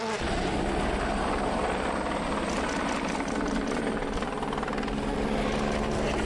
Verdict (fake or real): real